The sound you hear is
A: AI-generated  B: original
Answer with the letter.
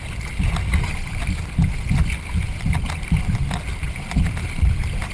B